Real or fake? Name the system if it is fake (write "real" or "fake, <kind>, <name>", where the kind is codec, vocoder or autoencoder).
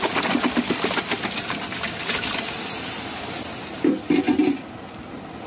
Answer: real